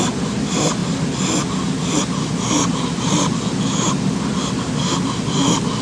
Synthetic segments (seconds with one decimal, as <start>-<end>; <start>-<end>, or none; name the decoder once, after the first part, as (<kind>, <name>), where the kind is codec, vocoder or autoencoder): none